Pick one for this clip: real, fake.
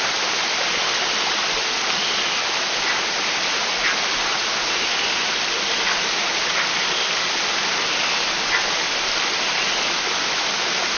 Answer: real